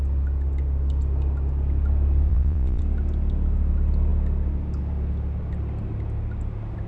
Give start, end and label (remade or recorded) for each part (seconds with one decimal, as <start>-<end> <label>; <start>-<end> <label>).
0.0-2.3 recorded; 2.3-2.8 remade; 2.8-6.9 recorded